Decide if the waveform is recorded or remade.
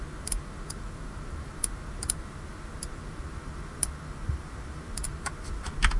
remade